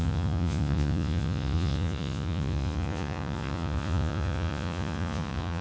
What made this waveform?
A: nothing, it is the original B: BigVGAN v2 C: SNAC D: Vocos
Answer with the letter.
D